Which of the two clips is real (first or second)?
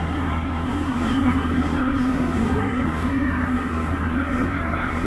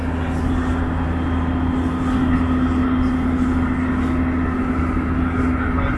second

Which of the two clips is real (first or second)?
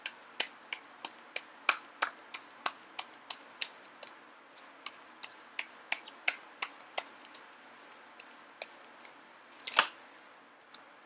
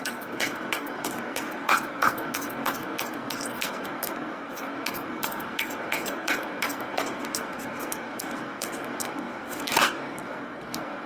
first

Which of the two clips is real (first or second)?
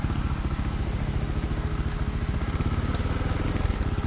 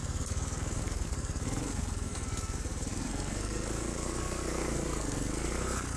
first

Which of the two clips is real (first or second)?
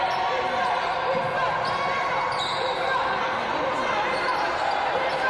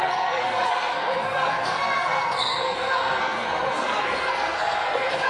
first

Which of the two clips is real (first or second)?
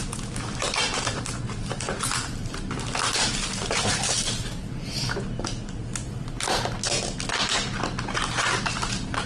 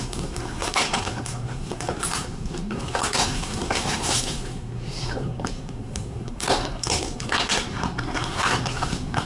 first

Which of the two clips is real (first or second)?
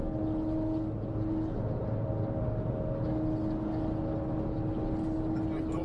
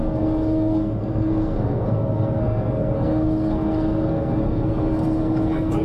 first